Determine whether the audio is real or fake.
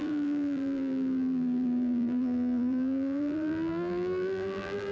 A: fake